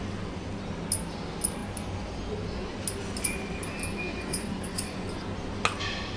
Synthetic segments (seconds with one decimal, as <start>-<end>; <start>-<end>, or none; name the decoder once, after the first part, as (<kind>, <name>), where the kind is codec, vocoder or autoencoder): 4.1-5.1 (vocoder, Vocos)